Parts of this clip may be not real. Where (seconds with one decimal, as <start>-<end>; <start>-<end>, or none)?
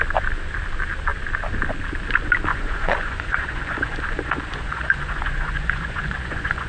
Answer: 2.5-6.7